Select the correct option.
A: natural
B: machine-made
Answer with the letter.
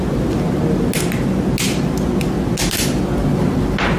A